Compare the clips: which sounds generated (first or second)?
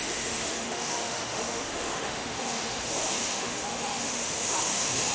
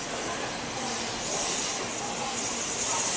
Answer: first